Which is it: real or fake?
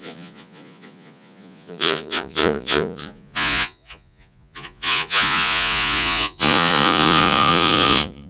fake